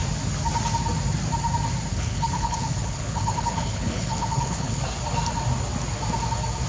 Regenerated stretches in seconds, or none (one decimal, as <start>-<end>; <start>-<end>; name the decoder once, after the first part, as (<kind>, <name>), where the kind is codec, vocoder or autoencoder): 1.9-4.8 (codec, HILCodec)